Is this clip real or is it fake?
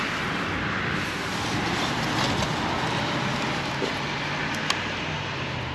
real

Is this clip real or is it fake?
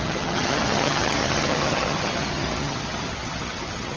fake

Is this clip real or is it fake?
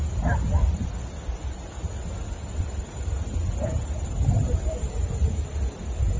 real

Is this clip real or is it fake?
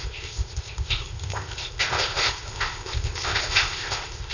fake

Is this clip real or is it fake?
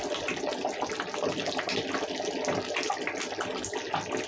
real